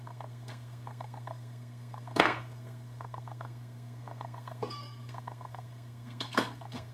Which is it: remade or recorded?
remade